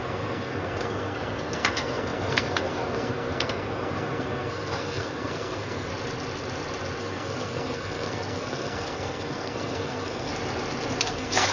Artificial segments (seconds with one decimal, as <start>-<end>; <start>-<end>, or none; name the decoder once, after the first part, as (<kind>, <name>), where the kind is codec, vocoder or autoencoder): 0.0-5.9 (codec, SNAC); 7.0-10.3; 11.0-11.5